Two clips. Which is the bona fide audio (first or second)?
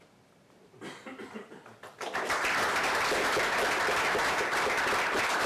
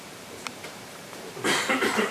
first